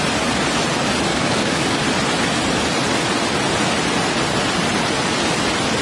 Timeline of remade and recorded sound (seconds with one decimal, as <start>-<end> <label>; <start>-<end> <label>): 0.0-1.1 recorded; 1.1-1.8 remade; 1.8-5.8 recorded